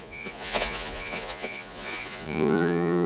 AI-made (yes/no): yes